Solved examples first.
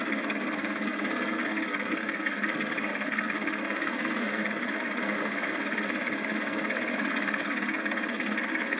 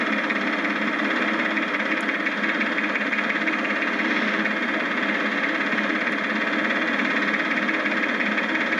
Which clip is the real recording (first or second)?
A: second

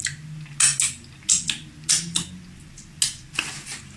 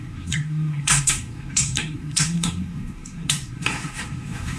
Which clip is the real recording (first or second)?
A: first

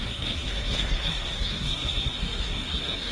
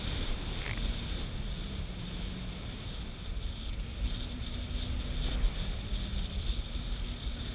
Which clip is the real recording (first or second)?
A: second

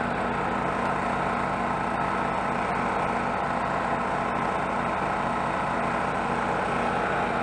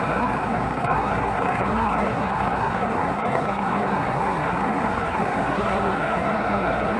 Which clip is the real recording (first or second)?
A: first